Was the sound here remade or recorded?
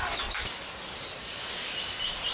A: recorded